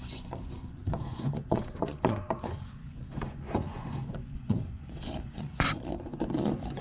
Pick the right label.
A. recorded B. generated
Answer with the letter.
B